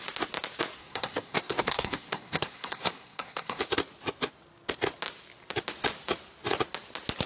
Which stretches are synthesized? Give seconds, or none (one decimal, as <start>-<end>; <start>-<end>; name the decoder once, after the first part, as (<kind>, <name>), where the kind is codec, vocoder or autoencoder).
0.8-3.6 (codec, SNAC)